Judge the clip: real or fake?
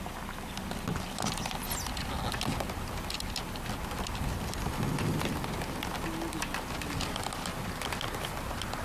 real